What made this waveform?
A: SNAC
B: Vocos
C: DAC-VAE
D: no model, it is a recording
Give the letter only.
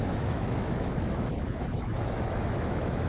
C